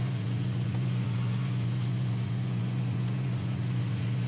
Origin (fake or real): fake